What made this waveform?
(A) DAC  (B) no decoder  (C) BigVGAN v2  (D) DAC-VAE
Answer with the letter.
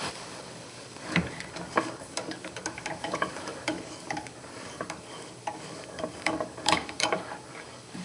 A